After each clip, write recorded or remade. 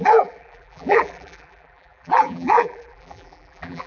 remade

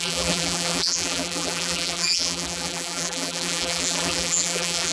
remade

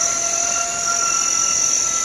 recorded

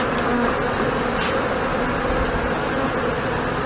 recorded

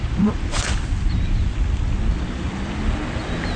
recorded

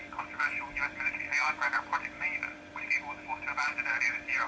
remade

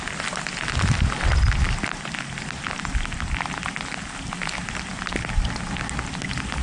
recorded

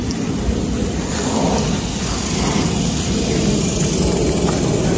recorded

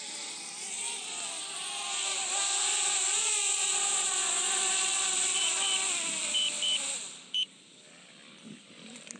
remade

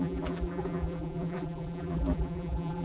remade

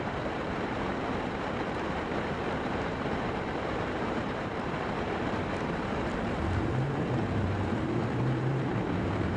remade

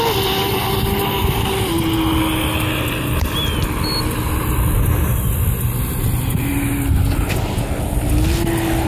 recorded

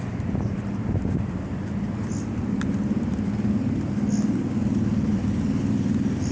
recorded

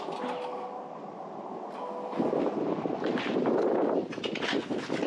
recorded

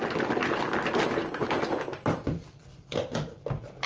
remade